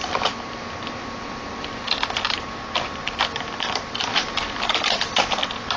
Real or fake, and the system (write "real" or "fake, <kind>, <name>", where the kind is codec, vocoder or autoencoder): real